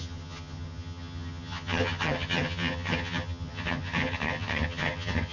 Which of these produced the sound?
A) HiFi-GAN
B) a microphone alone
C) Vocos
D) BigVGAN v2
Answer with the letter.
A